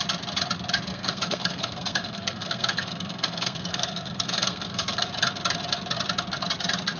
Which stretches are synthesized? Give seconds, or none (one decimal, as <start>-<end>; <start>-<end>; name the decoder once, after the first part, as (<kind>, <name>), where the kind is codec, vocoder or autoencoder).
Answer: 0.9-5.1 (codec, SNAC)